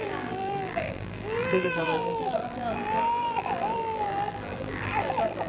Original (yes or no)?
no